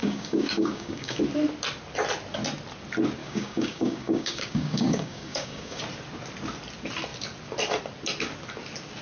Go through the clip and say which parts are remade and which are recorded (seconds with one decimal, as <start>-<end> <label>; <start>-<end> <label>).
0.0-1.2 remade; 1.2-3.2 recorded; 3.2-5.8 remade; 5.8-9.0 recorded